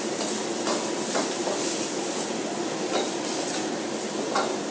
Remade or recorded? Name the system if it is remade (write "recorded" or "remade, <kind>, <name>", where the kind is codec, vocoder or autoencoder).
recorded